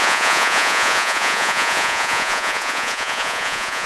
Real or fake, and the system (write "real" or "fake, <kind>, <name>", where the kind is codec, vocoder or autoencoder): fake, vocoder, Vocos